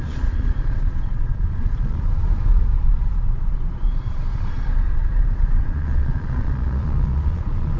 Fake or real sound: fake